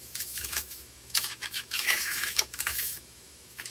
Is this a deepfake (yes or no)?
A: yes